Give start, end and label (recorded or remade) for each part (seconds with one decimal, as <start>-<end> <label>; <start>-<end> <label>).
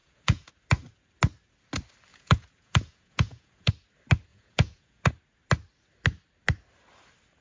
0.0-0.5 remade; 0.5-2.1 recorded; 2.1-3.7 remade; 3.7-4.3 recorded; 4.3-5.1 remade; 5.1-7.4 recorded